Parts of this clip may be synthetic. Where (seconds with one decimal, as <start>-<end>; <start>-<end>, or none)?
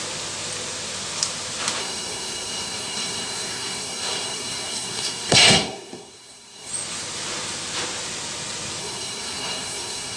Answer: 1.8-6.7; 8.8-10.2